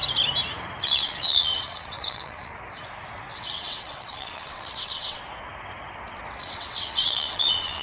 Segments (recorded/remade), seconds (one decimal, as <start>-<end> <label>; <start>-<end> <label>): 0.0-0.8 recorded; 0.8-2.5 remade; 2.5-3.3 recorded; 3.3-5.2 remade; 5.2-6.4 recorded; 6.4-7.8 remade